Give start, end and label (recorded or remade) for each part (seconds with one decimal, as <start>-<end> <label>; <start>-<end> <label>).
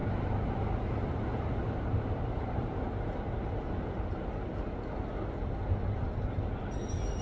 0.0-4.3 remade; 4.3-7.2 recorded